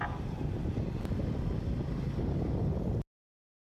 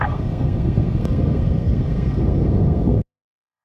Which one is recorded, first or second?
first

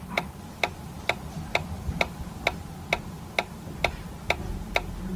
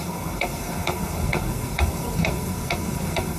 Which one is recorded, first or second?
first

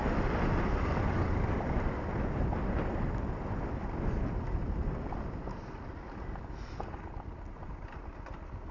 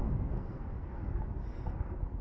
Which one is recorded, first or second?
first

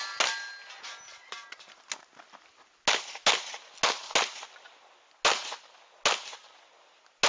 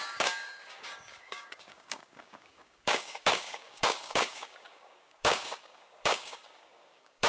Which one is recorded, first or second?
first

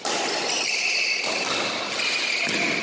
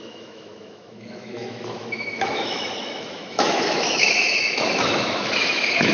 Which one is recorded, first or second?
first